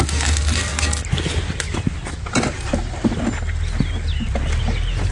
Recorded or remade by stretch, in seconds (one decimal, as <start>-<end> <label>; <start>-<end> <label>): 0.0-5.1 recorded